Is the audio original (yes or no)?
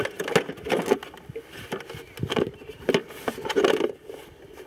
yes